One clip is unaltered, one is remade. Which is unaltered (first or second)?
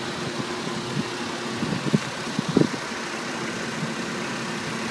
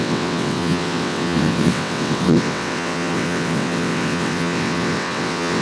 first